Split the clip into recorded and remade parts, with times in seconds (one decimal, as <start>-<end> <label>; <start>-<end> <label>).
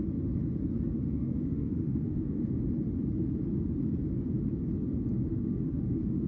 0.0-1.0 recorded; 1.0-2.6 remade; 2.6-5.3 recorded; 5.3-6.3 remade